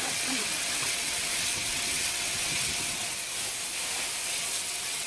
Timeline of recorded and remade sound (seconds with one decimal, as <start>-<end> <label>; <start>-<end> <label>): 0.0-3.3 remade; 3.3-4.2 recorded; 4.2-5.1 remade